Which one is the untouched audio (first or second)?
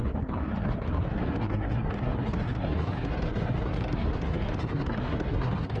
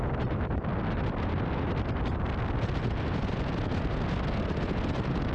second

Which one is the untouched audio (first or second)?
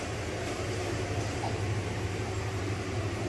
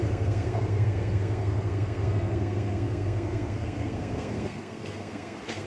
first